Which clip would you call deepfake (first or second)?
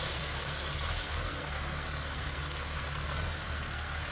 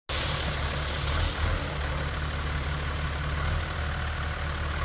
first